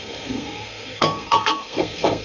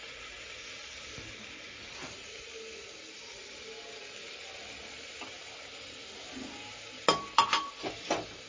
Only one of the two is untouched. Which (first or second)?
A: second